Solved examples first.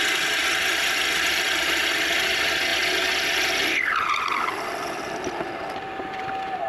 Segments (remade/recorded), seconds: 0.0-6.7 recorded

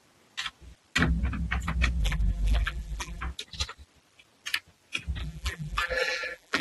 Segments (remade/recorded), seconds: 0.0-2.0 recorded; 2.0-3.2 remade; 3.2-5.2 recorded; 5.2-6.6 remade